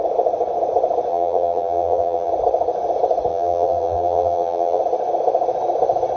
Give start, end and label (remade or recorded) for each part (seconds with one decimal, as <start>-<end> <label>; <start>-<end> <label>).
0.0-1.1 recorded; 1.1-2.3 remade; 2.3-3.3 recorded; 3.3-4.8 remade; 4.8-6.2 recorded